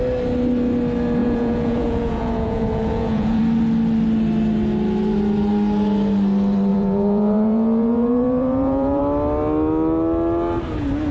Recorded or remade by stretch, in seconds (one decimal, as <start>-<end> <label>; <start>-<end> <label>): 0.0-1.2 recorded; 1.2-3.4 remade; 3.4-6.7 recorded; 6.7-9.0 remade; 9.0-11.1 recorded